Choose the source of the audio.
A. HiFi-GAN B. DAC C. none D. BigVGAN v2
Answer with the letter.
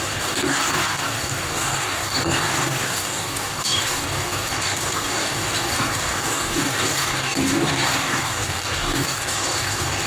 B